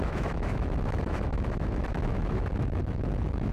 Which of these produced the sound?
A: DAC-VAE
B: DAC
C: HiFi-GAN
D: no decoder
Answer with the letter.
A